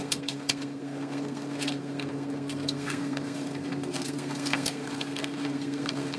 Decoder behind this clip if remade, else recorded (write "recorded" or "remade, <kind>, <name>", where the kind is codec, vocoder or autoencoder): remade, codec, SNAC